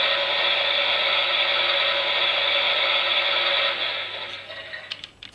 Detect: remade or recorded recorded